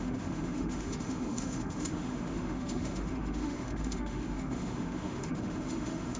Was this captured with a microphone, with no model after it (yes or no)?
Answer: no